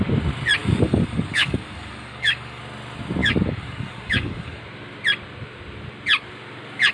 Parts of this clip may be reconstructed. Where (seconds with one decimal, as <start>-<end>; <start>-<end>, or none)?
0.6-2.6; 3.2-4.6